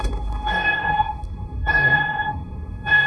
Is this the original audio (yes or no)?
no